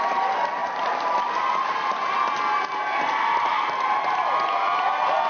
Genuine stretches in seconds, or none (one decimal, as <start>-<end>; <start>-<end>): 0.0-5.3